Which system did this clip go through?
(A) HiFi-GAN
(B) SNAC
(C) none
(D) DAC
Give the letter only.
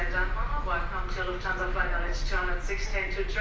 C